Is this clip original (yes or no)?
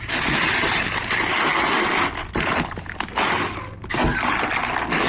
yes